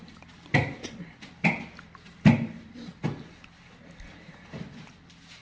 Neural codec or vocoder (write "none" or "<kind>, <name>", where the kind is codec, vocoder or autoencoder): none